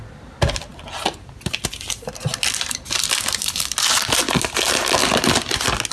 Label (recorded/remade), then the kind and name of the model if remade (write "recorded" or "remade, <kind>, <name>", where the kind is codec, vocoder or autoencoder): recorded